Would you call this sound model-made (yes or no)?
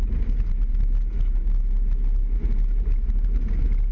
no